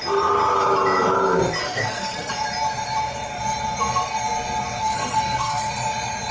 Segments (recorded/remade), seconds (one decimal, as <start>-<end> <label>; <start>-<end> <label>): 0.0-1.6 recorded; 1.6-2.3 remade; 2.3-4.8 recorded; 4.8-5.7 remade; 5.7-6.3 recorded